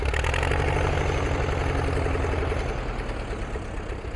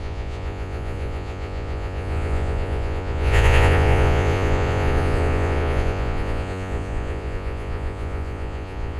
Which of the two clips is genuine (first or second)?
first